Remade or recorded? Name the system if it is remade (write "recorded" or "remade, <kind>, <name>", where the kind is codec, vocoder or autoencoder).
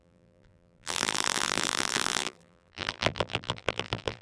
remade, vocoder, BigVGAN v2